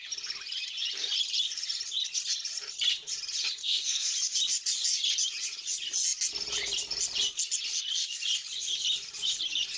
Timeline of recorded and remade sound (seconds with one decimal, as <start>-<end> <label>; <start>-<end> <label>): 0.0-3.6 recorded; 3.6-4.1 remade; 4.1-9.8 recorded